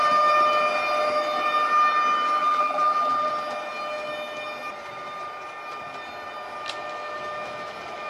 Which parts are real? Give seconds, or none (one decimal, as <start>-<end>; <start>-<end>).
0.0-2.4; 3.3-8.1